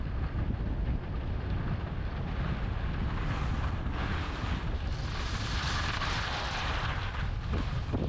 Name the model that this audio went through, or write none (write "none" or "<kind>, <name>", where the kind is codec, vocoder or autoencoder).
none